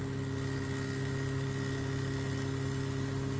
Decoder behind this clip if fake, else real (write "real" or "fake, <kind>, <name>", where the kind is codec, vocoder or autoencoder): real